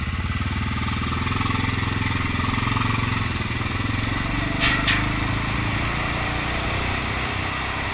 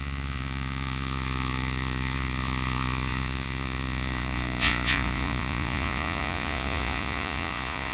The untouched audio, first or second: first